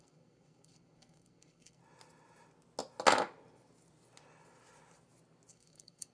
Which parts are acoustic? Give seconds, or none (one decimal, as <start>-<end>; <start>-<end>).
1.8-5.5